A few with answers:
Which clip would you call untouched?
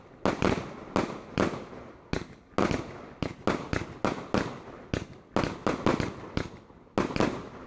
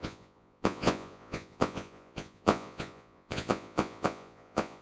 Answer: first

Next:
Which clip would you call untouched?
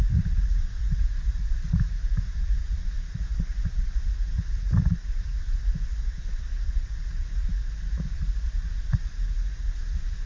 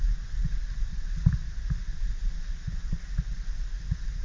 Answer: second